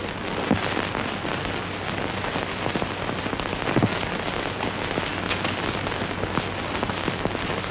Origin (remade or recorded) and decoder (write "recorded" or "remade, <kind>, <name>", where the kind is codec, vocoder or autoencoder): recorded